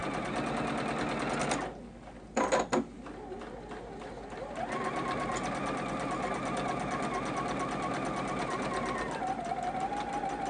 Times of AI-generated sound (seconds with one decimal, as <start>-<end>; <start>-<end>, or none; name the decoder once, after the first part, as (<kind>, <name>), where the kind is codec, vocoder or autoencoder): none